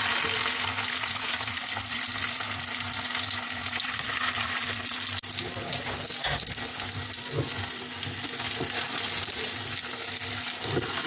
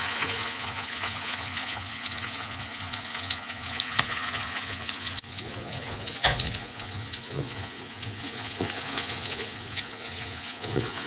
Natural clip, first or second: first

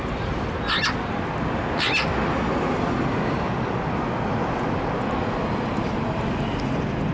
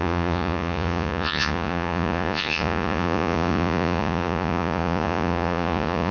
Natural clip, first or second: first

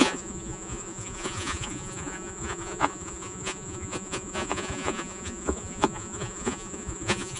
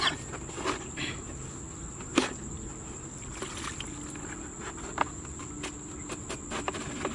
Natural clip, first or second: second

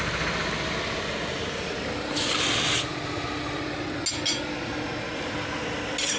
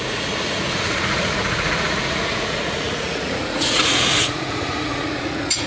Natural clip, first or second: first